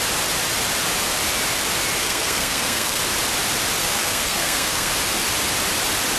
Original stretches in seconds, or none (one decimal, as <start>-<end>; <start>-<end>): 0.0-2.0; 3.0-3.8; 4.9-6.2